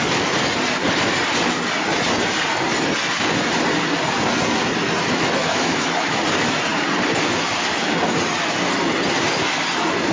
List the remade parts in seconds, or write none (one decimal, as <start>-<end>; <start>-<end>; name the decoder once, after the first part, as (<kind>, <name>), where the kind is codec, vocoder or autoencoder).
5.4-6.2 (autoencoder, DAC-VAE)